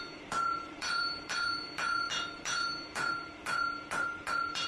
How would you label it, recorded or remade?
remade